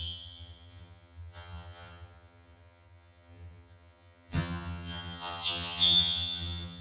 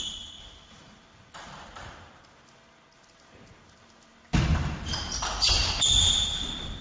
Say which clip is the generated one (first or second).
first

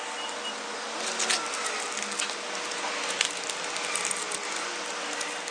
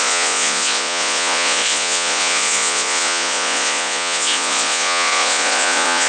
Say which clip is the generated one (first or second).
second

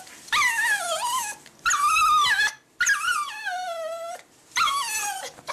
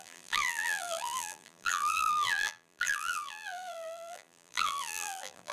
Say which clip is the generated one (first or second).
second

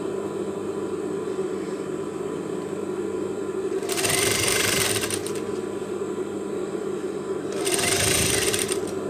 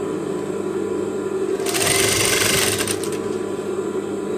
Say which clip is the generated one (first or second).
first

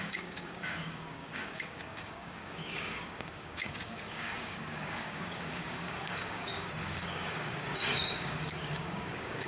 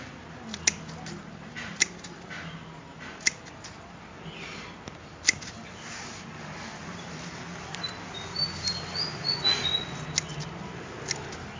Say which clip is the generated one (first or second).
first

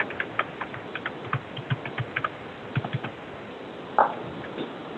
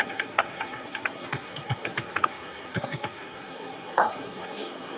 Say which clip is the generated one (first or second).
second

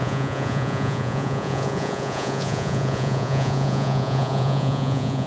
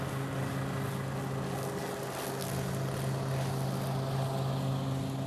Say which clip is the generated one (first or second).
first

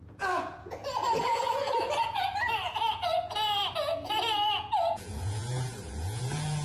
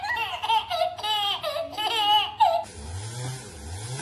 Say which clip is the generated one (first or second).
first